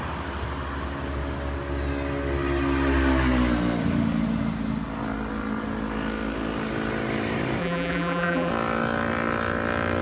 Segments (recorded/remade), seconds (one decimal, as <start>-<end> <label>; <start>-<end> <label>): 0.0-7.6 recorded; 7.6-8.5 remade; 8.5-10.0 recorded